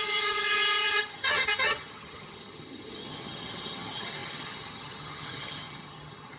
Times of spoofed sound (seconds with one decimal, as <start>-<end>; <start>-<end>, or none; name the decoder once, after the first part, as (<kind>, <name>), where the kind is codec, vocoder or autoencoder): 0.0-6.4 (vocoder, HiFi-GAN)